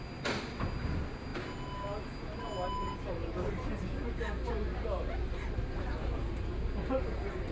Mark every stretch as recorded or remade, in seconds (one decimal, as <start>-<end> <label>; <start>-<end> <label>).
0.0-7.5 recorded